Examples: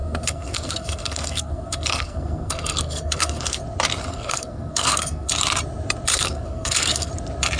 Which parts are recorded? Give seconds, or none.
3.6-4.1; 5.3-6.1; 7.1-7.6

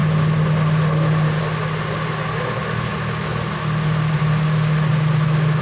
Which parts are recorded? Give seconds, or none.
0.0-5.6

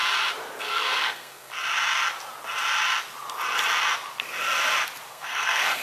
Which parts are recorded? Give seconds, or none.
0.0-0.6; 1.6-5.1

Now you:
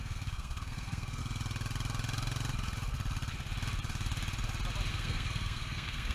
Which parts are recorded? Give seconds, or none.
1.2-4.9

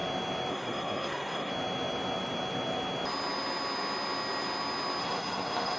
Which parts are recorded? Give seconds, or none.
0.0-0.5; 1.5-5.0